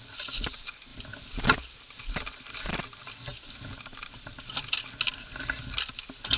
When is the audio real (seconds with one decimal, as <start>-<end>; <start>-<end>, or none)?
0.0-6.4